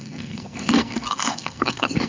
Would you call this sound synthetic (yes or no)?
yes